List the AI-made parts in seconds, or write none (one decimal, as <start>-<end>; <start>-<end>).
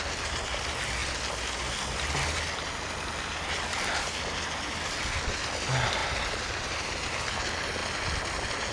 none